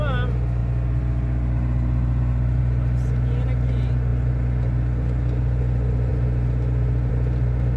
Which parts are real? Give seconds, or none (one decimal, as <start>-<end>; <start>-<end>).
0.0-7.8